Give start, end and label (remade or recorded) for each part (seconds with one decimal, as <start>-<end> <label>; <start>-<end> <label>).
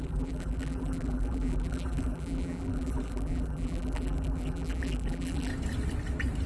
0.0-5.5 remade; 5.5-6.5 recorded